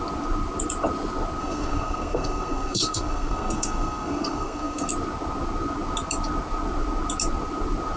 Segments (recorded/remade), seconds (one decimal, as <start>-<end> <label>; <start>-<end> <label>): 0.0-1.4 recorded; 1.4-4.9 remade; 4.9-8.0 recorded